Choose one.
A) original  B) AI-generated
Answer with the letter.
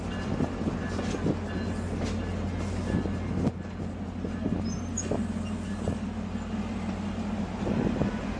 A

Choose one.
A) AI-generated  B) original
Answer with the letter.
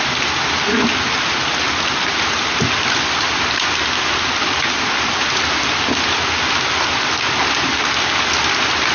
B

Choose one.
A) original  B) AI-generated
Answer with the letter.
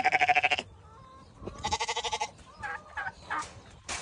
A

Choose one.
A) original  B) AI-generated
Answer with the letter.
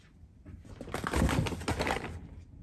A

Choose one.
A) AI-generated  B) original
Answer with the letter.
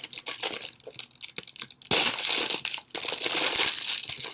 B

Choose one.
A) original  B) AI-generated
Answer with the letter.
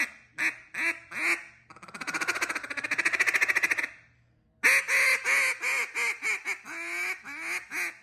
A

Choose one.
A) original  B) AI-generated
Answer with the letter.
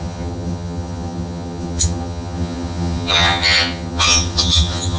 B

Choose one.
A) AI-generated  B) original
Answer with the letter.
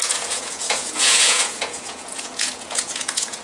A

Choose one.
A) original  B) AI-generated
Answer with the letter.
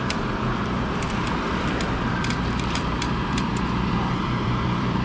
B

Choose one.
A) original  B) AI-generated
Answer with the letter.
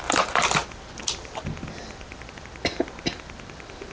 A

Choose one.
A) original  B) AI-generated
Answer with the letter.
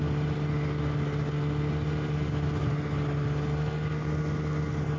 A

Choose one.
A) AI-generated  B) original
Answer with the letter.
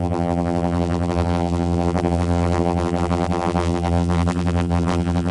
A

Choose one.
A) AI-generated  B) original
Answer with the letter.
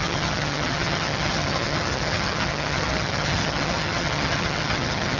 A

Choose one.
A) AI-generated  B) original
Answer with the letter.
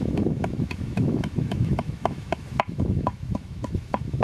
A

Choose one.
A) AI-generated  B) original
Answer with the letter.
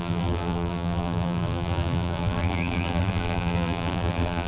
A